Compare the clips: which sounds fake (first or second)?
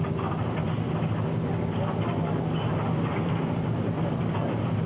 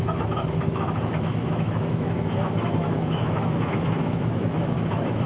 second